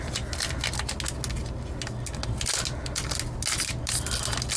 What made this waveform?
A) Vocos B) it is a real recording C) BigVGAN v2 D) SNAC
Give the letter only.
B